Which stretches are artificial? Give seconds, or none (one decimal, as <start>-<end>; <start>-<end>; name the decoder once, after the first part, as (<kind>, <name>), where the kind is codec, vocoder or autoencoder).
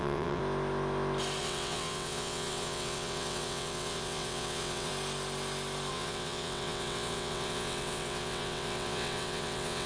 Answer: 0.0-0.4 (vocoder, WaveNeXt); 1.4-4.9; 5.9-9.9